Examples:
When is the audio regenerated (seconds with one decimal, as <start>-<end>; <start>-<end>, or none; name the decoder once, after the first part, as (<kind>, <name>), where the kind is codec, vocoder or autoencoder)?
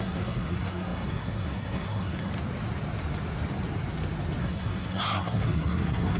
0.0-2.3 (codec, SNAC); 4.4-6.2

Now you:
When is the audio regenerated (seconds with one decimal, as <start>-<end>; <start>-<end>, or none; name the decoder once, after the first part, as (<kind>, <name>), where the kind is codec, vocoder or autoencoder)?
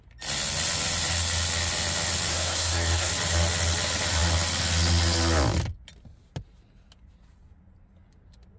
2.3-3.1 (codec, SNAC)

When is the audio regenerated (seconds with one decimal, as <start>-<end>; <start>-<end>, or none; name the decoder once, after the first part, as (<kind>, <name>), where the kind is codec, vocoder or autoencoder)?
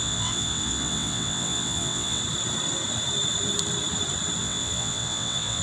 0.0-2.2 (vocoder, WaveNeXt); 4.4-5.6